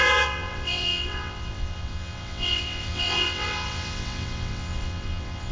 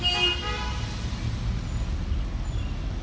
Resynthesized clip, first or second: first